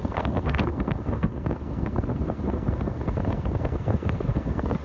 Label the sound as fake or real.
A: fake